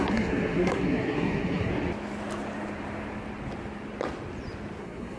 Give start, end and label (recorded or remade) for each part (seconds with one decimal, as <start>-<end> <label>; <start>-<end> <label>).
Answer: 0.0-1.7 remade; 1.7-4.8 recorded; 4.8-5.2 remade